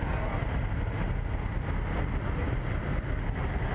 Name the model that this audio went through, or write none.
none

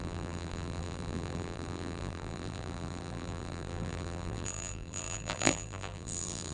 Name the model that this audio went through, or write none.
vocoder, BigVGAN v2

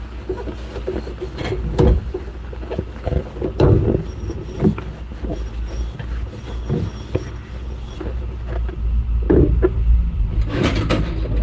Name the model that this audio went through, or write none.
none